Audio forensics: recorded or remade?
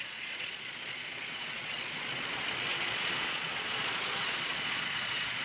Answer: remade